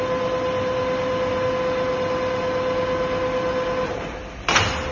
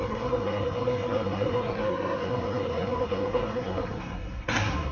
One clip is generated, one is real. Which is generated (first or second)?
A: second